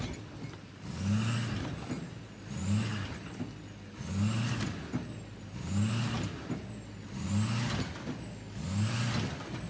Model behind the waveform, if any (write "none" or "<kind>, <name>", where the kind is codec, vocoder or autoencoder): none